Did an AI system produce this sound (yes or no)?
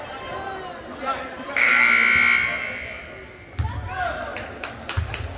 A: no